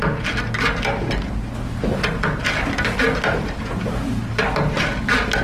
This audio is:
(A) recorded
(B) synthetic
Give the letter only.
A